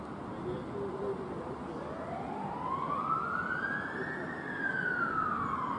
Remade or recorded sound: recorded